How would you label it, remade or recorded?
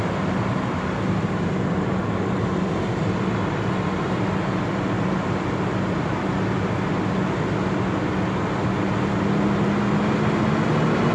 recorded